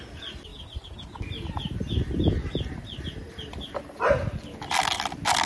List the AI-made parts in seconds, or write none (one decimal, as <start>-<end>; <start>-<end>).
none